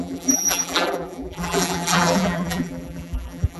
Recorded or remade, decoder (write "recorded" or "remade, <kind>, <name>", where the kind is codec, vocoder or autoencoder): remade, vocoder, BigVGAN v2